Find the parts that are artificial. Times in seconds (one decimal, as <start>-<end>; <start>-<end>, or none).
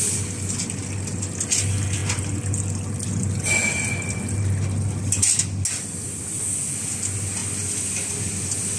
none